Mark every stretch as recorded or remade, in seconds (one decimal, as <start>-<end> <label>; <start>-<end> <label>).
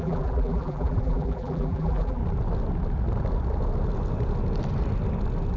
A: 0.0-2.2 remade; 2.2-5.6 recorded